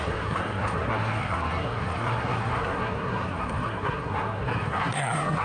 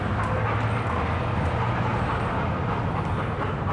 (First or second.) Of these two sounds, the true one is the second